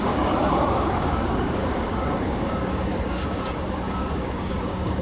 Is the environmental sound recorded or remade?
remade